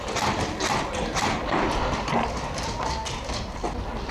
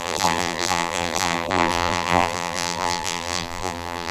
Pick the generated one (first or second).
second